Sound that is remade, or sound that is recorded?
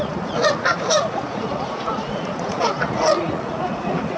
remade